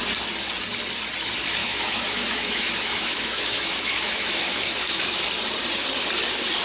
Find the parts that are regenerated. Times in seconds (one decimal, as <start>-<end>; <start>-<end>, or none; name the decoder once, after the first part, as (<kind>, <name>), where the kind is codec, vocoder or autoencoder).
1.6-5.2 (autoencoder, DAC-VAE)